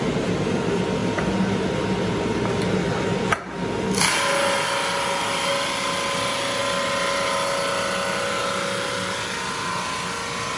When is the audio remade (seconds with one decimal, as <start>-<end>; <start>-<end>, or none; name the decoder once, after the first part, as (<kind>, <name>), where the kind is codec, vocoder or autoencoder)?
none